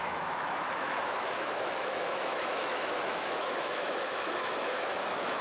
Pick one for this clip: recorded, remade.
remade